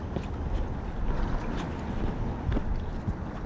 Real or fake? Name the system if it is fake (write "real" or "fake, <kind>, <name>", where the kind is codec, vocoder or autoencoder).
real